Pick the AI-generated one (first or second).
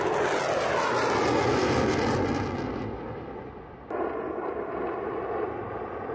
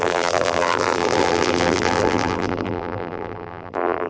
second